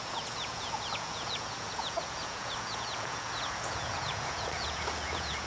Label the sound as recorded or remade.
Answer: remade